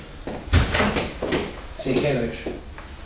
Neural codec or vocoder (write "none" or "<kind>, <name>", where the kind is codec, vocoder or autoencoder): none